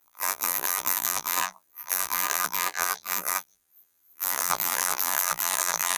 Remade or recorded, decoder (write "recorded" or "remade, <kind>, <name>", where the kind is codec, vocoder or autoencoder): remade, vocoder, BigVGAN v2